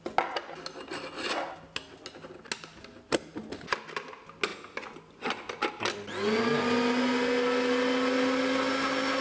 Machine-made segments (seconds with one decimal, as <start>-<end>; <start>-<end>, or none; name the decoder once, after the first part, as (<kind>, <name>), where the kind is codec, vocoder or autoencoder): none